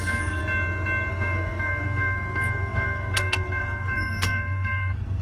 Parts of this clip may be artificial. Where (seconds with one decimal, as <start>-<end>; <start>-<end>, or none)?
0.0-0.4; 1.1-5.2